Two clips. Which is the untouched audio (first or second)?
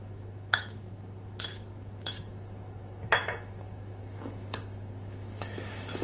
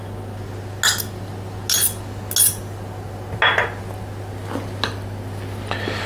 second